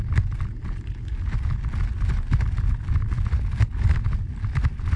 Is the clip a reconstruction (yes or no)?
no